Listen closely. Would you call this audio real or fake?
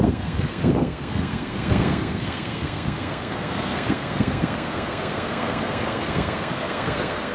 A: fake